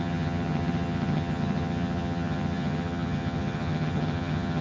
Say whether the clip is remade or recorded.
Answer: remade